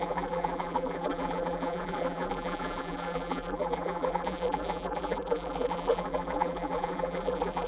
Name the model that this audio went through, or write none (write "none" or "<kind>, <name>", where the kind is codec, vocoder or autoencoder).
vocoder, BigVGAN v2